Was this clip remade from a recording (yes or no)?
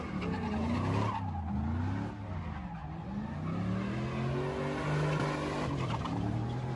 no